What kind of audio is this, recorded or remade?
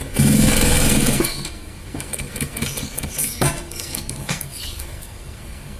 remade